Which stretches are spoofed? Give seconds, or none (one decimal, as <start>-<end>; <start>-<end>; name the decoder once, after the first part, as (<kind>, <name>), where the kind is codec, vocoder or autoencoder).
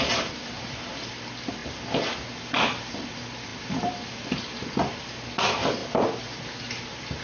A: 0.0-1.6 (vocoder, BigVGAN v2); 2.3-5.8